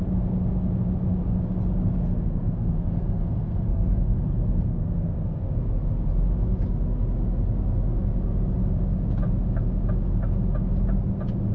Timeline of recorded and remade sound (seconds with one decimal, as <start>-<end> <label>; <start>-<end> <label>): 0.0-2.0 recorded; 2.0-5.7 remade; 5.7-11.5 recorded